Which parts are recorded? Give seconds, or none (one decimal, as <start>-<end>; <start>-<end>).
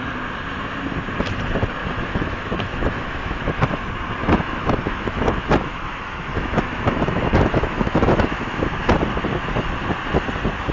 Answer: 0.0-1.8; 3.4-4.2; 8.6-10.7